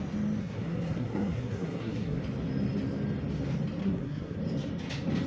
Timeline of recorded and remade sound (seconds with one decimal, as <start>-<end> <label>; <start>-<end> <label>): 0.0-0.4 recorded; 0.4-2.2 remade; 2.2-3.8 recorded; 3.8-4.4 remade; 4.4-5.3 recorded